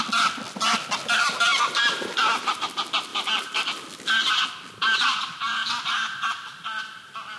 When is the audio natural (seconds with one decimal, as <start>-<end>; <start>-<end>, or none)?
0.0-1.5; 2.6-3.1; 3.6-7.4